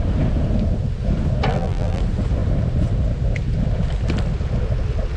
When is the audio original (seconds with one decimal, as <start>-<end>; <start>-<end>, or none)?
0.0-1.5; 2.0-5.2